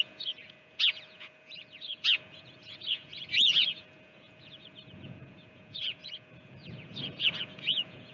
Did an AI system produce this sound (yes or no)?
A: yes